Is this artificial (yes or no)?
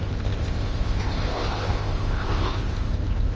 yes